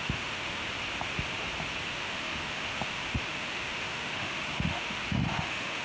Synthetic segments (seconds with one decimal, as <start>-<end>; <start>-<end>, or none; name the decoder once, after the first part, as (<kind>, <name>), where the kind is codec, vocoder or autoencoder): 0.0-0.6 (autoencoder, DAC-VAE); 1.9-5.8